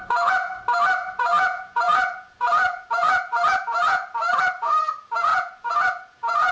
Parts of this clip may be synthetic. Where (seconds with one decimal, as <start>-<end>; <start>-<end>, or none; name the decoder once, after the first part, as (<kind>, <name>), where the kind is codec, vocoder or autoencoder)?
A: 0.0-0.5 (vocoder, Vocos); 1.1-4.0; 4.6-6.5